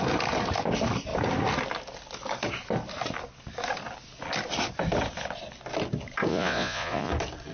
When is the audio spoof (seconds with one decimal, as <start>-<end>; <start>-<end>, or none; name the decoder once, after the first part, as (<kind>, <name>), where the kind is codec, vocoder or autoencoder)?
6.3-7.1 (vocoder, Vocos)